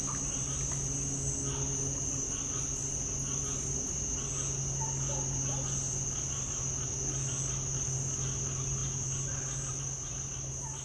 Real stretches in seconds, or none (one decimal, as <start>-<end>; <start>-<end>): 0.0-10.8